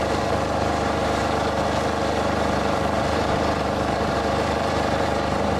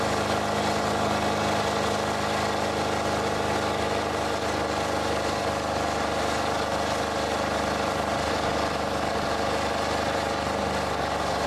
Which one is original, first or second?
second